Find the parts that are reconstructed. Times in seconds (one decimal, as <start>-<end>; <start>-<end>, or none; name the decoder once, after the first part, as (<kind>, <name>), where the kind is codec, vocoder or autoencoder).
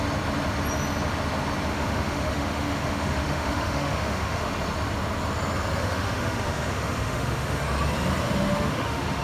1.7-4.5 (autoencoder, DAC-VAE); 5.8-7.6; 8.5-9.2